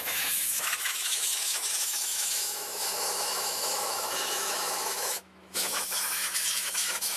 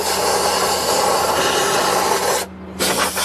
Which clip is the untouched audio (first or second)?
second